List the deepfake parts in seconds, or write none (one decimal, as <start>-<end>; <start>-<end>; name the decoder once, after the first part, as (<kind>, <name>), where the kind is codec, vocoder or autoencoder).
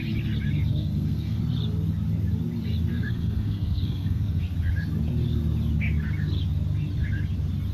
0.7-1.4 (codec, SNAC); 2.9-4.4